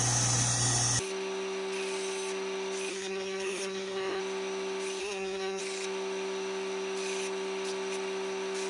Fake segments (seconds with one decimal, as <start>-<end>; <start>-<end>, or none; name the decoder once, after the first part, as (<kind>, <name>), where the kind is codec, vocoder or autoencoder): 2.9-4.2 (codec, SNAC); 5.0-5.6